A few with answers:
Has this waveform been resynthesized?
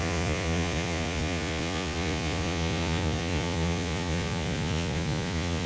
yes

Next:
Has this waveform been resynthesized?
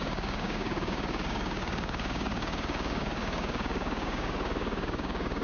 yes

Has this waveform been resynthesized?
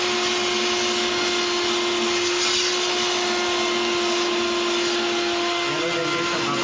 no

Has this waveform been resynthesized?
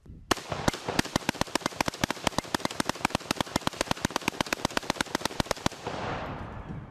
no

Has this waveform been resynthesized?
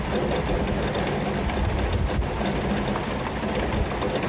no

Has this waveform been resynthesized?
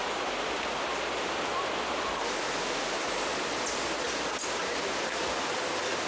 no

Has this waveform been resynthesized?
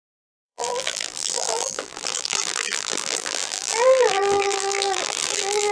yes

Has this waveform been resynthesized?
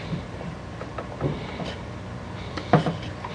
yes